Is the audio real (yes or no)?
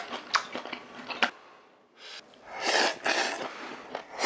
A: yes